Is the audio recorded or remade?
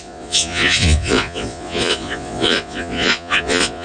remade